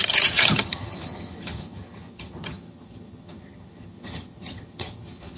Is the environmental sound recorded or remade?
remade